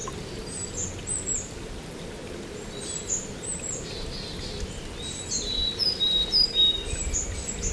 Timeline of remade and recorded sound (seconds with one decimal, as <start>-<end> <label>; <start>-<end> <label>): 0.0-7.7 recorded